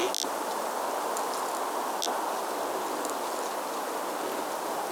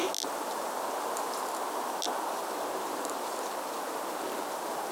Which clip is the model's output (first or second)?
second